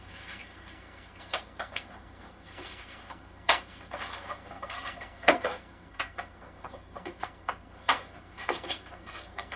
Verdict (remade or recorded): remade